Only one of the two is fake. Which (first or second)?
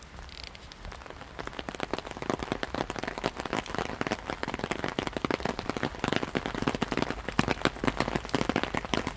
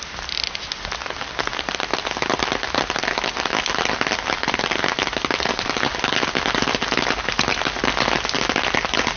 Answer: first